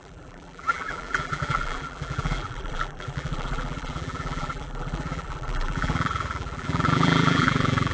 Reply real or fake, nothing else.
fake